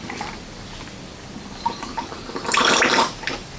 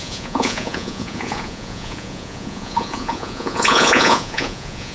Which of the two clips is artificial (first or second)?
second